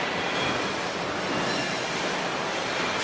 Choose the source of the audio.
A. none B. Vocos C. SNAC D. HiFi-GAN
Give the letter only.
A